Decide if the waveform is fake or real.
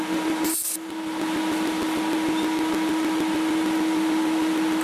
real